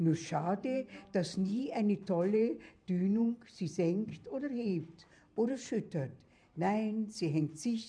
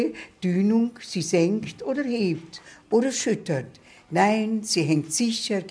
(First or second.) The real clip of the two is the second